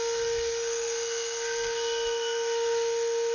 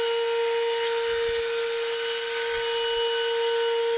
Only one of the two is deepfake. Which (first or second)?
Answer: first